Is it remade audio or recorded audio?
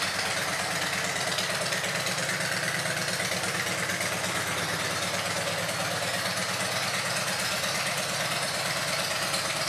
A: recorded